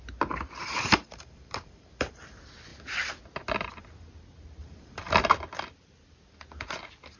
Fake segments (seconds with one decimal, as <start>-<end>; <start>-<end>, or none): 0.6-2.2; 4.6-5.3